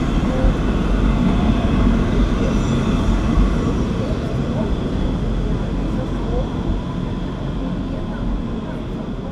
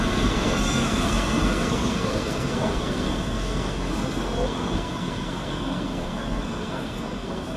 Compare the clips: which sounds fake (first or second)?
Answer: second